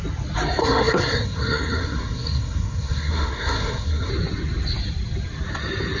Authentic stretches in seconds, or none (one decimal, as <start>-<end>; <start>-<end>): 0.0-0.6; 4.1-6.0